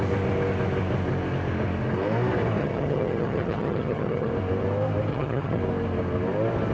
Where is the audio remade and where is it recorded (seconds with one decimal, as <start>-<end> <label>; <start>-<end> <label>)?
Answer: 0.0-2.6 recorded; 2.6-4.3 remade; 4.3-5.1 recorded; 5.1-5.6 remade; 5.6-6.7 recorded

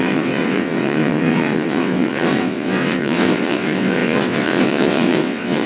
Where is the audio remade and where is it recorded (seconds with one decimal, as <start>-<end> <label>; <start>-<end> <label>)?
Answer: 0.0-5.7 remade

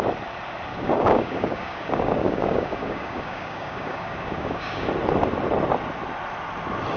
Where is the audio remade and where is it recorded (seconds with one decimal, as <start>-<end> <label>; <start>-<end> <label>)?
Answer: 0.0-0.7 recorded; 0.7-4.9 remade; 4.9-7.0 recorded

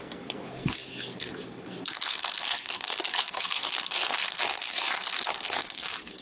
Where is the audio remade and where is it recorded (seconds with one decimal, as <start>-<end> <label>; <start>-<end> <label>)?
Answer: 0.0-6.2 remade

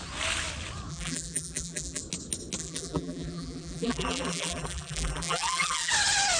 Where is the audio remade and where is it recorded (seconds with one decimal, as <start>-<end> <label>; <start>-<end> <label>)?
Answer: 0.0-0.9 recorded; 0.9-2.0 remade; 2.0-2.6 recorded; 2.6-5.9 remade; 5.9-6.4 recorded

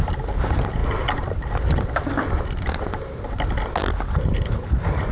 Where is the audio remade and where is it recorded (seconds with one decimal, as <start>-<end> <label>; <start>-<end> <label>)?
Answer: 0.0-5.1 recorded

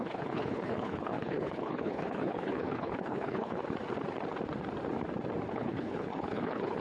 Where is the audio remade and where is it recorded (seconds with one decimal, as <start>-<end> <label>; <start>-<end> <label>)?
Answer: 0.0-3.6 remade; 3.6-5.5 recorded; 5.5-6.8 remade

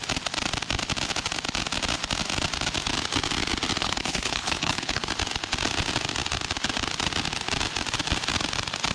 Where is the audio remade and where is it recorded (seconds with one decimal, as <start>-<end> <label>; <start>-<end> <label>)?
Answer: 0.0-3.8 recorded; 3.8-5.1 remade; 5.1-8.9 recorded